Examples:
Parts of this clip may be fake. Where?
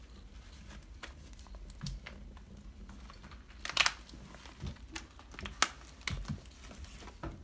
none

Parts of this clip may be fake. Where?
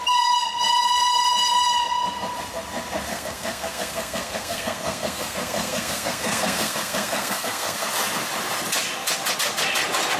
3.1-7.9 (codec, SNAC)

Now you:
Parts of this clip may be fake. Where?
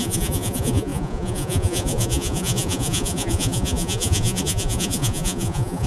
0.0-5.9 (vocoder, Vocos)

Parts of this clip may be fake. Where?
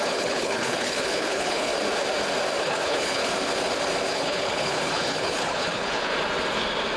0.0-1.7 (codec, HILCodec); 2.6-3.2; 4.1-6.1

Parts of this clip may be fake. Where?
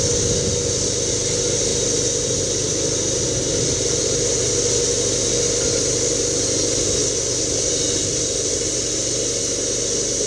none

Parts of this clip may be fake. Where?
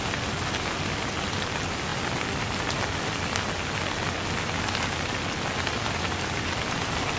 none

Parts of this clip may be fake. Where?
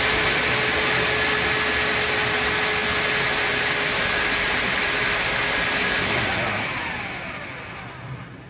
none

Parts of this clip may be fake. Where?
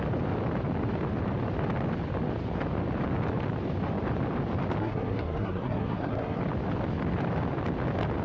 4.8-6.4 (codec, SNAC)